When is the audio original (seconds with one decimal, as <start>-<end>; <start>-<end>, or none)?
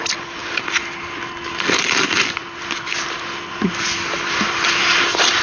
0.0-5.4